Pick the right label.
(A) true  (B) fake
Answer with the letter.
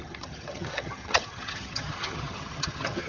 B